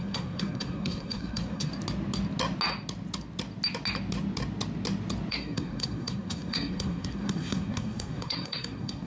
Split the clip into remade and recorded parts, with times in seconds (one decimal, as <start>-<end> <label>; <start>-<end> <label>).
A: 0.0-1.7 remade; 1.7-5.3 recorded; 5.3-9.1 remade